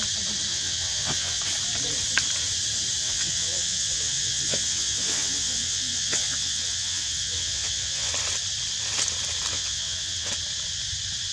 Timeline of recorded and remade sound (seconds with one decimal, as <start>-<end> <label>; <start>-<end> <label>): 0.0-0.5 recorded; 0.5-1.4 remade; 1.4-3.0 recorded; 3.0-8.1 remade; 8.1-9.5 recorded; 9.5-10.3 remade; 10.3-11.3 recorded